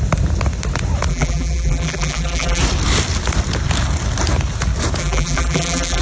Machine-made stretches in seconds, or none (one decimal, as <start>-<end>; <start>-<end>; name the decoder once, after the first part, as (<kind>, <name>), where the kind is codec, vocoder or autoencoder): 1.1-2.6 (vocoder, BigVGAN v2); 5.0-6.0